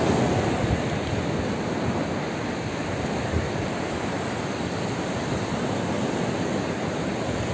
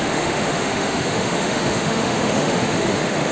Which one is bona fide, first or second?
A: first